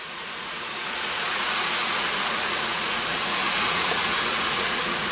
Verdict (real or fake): fake